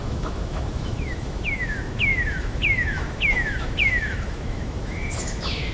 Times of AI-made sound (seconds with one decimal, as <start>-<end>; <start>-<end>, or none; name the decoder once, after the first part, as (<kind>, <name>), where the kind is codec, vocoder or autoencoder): 0.0-5.7 (autoencoder, DAC-VAE)